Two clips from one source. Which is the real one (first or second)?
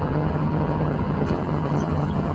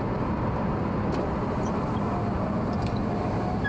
second